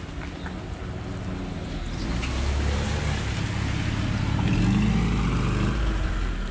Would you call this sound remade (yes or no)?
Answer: no